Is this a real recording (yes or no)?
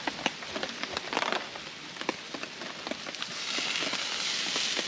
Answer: yes